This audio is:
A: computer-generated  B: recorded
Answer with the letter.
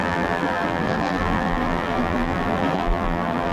A